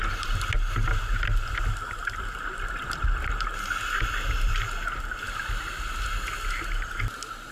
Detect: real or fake real